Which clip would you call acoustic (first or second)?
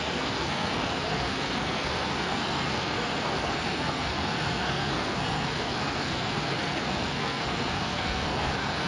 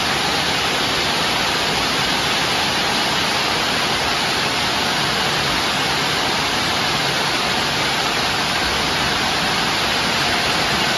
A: second